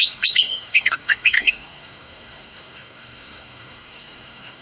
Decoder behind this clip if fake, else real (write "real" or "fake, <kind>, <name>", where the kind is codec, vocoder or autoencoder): fake, codec, SNAC